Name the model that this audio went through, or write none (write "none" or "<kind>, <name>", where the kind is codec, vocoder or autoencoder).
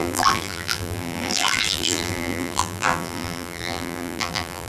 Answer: vocoder, BigVGAN v2